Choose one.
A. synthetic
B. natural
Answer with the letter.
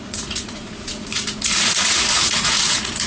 A